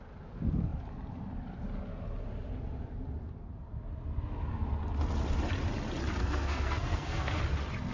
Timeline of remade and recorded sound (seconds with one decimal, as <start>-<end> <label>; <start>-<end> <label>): 0.0-6.2 recorded; 6.2-7.4 remade; 7.4-7.9 recorded